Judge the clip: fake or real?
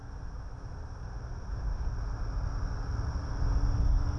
real